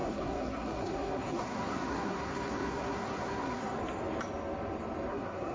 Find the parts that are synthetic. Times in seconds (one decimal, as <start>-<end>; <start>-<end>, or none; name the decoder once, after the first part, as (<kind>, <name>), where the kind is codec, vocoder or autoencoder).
0.0-3.8 (codec, SNAC); 5.1-5.5